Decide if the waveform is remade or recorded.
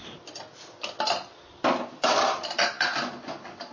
recorded